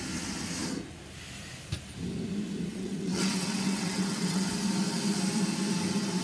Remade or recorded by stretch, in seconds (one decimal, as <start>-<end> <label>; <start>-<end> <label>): 0.0-2.7 recorded; 2.7-4.5 remade; 4.5-6.2 recorded